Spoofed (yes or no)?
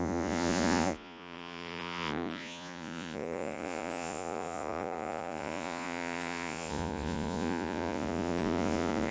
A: yes